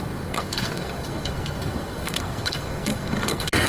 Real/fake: fake